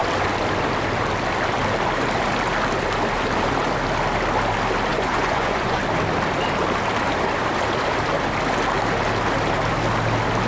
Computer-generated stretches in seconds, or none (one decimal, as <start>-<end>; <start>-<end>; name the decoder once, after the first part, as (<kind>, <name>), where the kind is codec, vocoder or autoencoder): 4.9-5.8 (vocoder, Vocos)